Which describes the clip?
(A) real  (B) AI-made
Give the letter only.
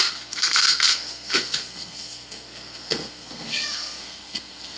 B